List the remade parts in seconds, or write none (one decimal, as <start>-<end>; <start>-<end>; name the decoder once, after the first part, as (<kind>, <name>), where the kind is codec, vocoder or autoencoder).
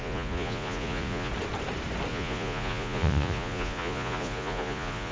0.0-1.3 (vocoder, Vocos); 2.1-5.1